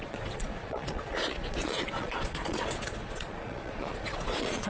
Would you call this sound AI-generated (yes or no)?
yes